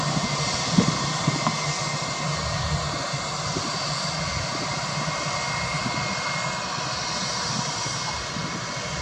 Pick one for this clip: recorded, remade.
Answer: recorded